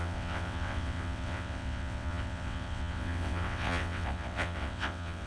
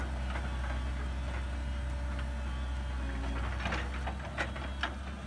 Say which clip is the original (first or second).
second